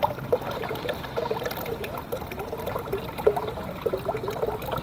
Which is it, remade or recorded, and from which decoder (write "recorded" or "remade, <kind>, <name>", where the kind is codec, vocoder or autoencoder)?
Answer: recorded